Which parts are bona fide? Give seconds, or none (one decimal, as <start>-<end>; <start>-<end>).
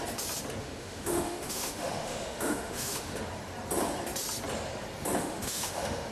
0.0-0.6; 3.2-5.2